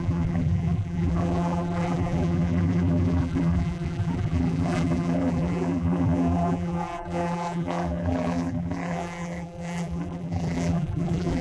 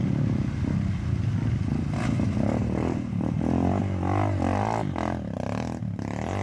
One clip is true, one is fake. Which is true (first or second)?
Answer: second